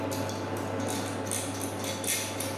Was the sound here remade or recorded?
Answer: recorded